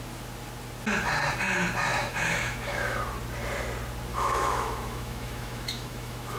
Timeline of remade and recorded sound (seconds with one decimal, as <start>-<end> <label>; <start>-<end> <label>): 0.0-1.9 recorded; 1.9-3.0 remade; 3.0-4.1 recorded; 4.1-6.4 remade